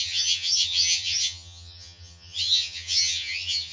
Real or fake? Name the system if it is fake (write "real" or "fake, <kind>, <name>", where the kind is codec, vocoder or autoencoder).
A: fake, vocoder, HiFi-GAN